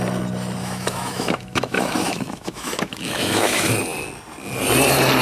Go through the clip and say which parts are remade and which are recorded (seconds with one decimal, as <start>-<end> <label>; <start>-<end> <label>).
0.0-0.6 recorded; 0.6-3.7 remade; 3.7-5.2 recorded

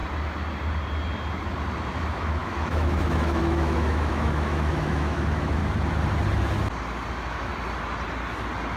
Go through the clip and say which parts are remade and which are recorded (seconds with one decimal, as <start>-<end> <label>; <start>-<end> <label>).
0.0-2.0 recorded; 2.0-5.6 remade; 5.6-7.1 recorded; 7.1-7.5 remade; 7.5-8.8 recorded

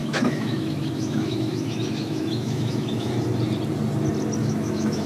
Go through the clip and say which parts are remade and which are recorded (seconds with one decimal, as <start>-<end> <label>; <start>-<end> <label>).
0.0-3.1 remade; 3.1-4.4 recorded; 4.4-5.1 remade

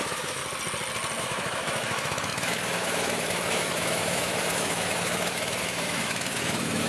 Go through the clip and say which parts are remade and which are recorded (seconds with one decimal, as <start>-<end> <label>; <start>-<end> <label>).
0.0-0.4 remade; 0.4-1.2 recorded; 1.2-6.9 remade

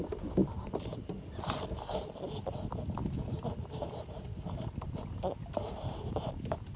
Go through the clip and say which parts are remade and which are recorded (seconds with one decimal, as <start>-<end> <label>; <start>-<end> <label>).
0.0-6.8 recorded

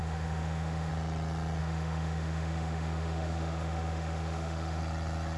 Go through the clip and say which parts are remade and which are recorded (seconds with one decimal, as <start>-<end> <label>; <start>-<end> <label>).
0.0-0.9 remade; 0.9-1.6 recorded; 1.6-4.8 remade; 4.8-5.4 recorded

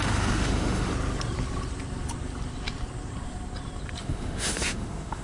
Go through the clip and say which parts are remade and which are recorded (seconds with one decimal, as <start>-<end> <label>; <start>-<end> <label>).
0.0-0.9 remade; 0.9-4.0 recorded; 4.0-5.2 remade